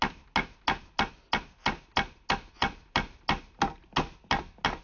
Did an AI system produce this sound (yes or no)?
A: no